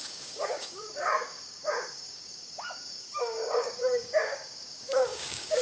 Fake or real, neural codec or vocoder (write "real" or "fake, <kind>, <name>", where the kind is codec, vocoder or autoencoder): fake, codec, DAC